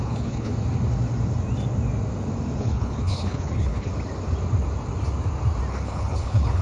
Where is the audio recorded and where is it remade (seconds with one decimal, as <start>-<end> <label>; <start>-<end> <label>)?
0.0-0.5 remade; 0.5-2.6 recorded; 2.6-3.9 remade; 3.9-5.7 recorded; 5.7-6.6 remade